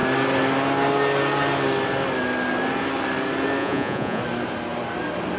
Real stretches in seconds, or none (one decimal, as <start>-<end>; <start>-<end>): 0.0-3.6; 4.2-5.4